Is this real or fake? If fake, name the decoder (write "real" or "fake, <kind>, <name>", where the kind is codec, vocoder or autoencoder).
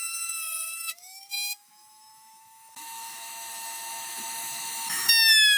fake, autoencoder, DAC-VAE